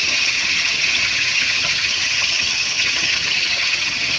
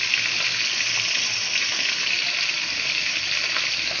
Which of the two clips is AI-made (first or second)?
first